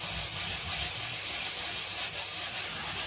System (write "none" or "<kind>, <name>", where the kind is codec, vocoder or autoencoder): none